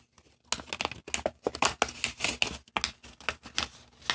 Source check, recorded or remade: recorded